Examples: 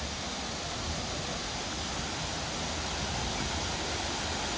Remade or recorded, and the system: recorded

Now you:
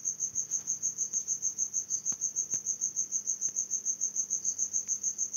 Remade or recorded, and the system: recorded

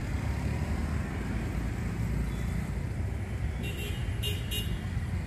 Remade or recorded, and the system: recorded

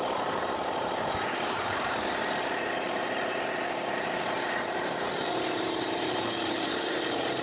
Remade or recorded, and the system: remade, vocoder, BigVGAN v2